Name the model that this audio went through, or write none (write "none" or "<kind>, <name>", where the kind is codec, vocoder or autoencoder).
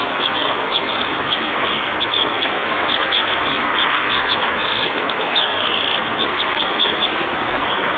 codec, SNAC